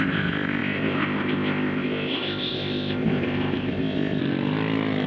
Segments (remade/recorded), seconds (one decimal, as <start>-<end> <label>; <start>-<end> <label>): 0.0-4.2 remade; 4.2-5.1 recorded